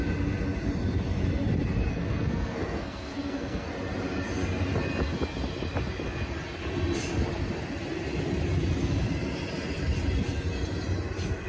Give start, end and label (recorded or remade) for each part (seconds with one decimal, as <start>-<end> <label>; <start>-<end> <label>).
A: 0.0-1.9 recorded; 1.9-3.7 remade; 3.7-11.5 recorded